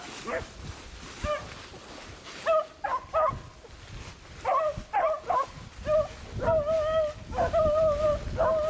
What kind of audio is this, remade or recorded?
recorded